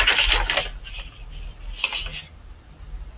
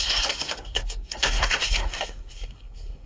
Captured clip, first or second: first